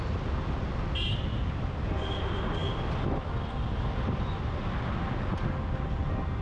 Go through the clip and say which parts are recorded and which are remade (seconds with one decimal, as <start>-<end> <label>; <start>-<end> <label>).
0.0-6.4 recorded